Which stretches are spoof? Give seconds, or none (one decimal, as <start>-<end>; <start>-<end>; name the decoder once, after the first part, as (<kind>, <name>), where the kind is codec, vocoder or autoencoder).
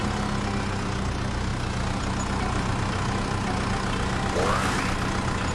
none